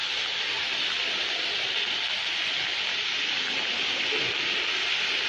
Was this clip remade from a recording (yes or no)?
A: no